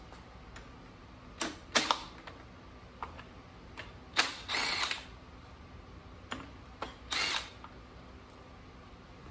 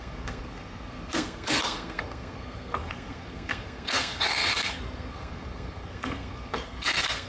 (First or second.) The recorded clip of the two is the first